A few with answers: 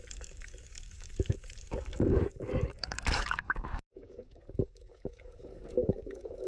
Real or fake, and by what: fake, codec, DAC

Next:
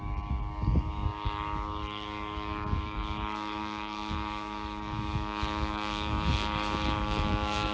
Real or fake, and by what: fake, codec, DAC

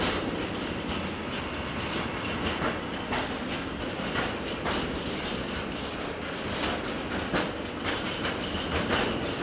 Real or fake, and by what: real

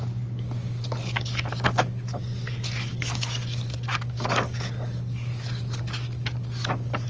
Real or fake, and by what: fake, codec, DAC